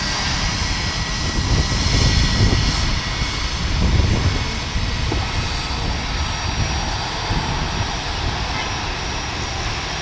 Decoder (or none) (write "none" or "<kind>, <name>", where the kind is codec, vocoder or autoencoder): none